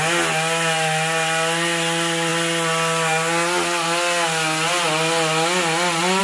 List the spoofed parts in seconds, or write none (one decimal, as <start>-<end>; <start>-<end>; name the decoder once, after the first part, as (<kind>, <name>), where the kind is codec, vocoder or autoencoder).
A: none